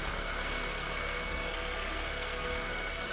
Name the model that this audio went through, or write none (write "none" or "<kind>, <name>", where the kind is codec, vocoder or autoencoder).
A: codec, SNAC